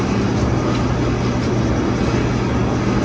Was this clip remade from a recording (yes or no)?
no